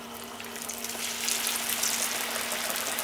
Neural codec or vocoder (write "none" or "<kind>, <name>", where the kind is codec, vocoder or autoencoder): none